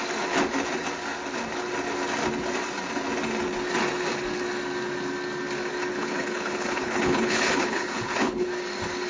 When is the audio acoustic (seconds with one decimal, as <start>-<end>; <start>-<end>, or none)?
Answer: 0.0-5.9; 8.5-9.1